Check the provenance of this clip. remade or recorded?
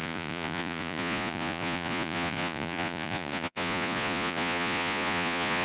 remade